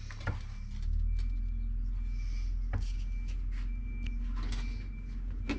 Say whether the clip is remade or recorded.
recorded